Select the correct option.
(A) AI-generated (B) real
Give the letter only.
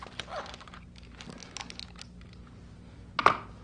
B